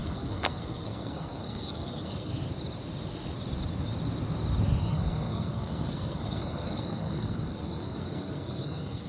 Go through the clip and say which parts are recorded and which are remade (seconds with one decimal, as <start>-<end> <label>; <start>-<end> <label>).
0.0-2.3 remade; 2.3-4.8 recorded; 4.8-9.1 remade